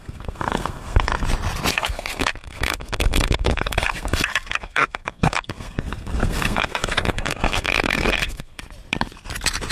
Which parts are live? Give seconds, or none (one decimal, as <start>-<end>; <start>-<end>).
1.1-1.7; 8.6-9.7